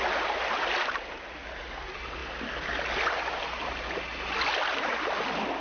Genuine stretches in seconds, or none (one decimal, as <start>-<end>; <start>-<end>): 0.0-5.6

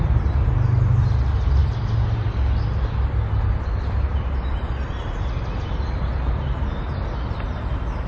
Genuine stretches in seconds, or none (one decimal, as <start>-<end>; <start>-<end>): 0.0-8.1

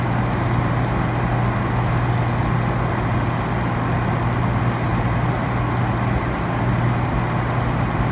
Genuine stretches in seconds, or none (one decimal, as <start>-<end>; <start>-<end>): 0.0-8.1

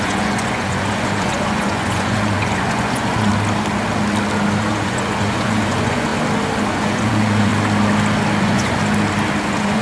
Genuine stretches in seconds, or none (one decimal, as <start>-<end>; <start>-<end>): 3.3-4.6; 6.1-6.7; 7.5-8.4; 8.8-9.4